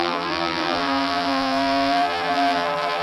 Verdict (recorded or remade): remade